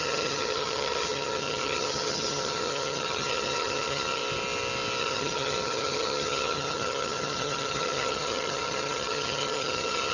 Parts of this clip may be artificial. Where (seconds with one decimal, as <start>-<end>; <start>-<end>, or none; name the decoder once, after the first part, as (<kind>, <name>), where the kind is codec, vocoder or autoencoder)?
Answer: 0.0-4.2 (vocoder, HiFi-GAN); 5.0-10.1